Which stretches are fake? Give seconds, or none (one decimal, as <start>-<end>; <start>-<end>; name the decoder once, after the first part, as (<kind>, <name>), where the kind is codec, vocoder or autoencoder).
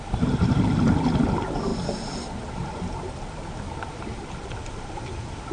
1.7-5.0 (vocoder, BigVGAN v2)